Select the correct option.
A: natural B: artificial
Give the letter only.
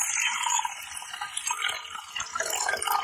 A